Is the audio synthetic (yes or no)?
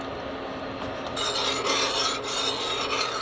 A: no